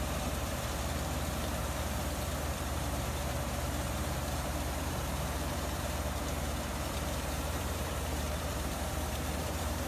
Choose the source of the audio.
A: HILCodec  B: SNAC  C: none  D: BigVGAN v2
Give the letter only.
D